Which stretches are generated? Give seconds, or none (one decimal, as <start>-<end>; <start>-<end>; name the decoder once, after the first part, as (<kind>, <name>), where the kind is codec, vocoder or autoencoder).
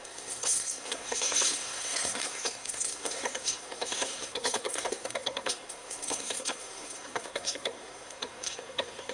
0.0-9.1 (codec, SNAC)